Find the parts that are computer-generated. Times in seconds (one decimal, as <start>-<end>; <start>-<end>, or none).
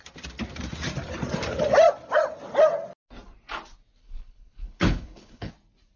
4.0-5.5